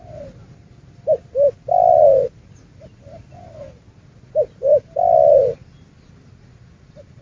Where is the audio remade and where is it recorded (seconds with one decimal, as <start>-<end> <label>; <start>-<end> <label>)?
0.0-7.2 recorded